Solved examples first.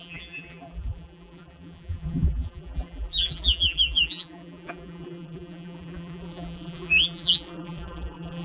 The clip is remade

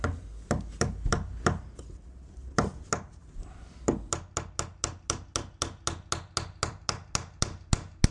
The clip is recorded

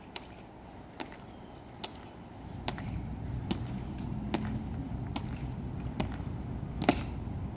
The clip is recorded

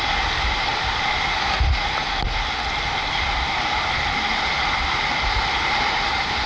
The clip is recorded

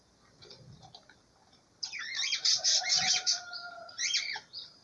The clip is remade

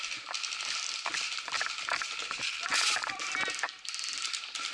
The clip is recorded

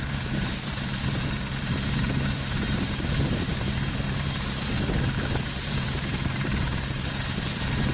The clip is remade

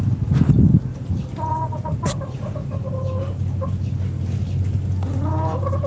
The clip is recorded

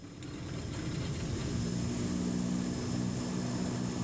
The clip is recorded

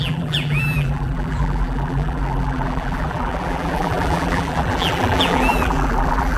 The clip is remade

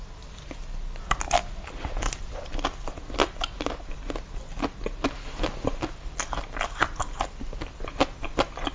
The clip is recorded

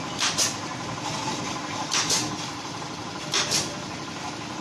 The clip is remade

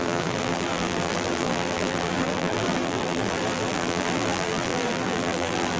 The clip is remade